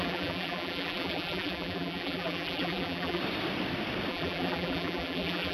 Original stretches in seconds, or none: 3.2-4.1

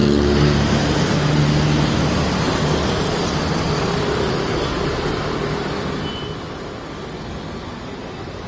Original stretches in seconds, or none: 0.0-8.5

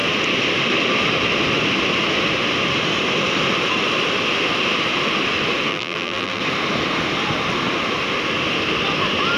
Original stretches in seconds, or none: 0.0-5.7; 6.4-9.4

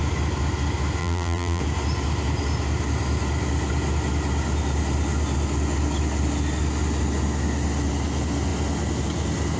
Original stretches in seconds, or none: 0.0-1.0; 1.6-9.6